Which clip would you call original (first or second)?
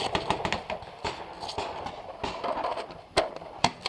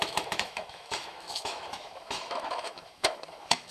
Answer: first